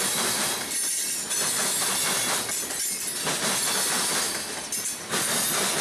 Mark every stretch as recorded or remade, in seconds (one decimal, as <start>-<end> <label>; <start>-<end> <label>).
0.0-5.8 recorded